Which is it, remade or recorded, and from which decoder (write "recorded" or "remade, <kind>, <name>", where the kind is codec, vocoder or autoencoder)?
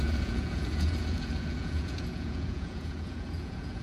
remade, vocoder, Vocos